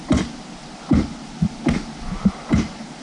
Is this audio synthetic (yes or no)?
no